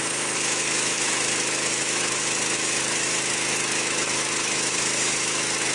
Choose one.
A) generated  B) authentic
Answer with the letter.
A